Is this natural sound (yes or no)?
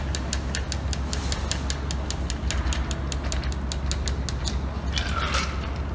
yes